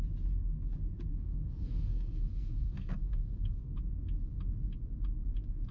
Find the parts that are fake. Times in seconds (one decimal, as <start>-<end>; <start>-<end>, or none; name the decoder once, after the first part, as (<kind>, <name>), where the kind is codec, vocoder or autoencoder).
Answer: 1.1-3.8 (codec, SNAC)